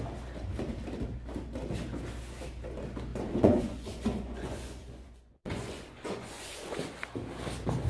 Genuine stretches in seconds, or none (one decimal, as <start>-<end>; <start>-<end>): 0.0-3.1; 6.9-7.9